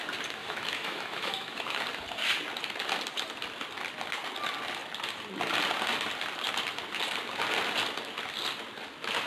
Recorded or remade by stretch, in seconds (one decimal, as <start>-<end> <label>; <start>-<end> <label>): 0.0-0.4 recorded; 0.4-1.8 remade; 1.8-9.3 recorded

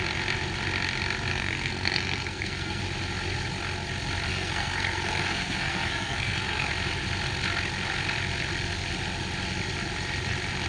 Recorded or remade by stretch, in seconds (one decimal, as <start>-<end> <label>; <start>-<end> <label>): 0.0-1.3 recorded; 1.3-2.8 remade; 2.8-4.3 recorded; 4.3-6.7 remade; 6.7-10.7 recorded

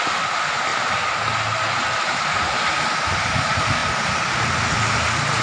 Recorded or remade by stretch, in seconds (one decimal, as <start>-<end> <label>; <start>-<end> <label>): 0.0-5.4 recorded